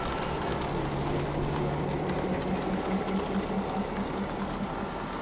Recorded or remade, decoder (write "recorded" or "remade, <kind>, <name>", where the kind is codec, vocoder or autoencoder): recorded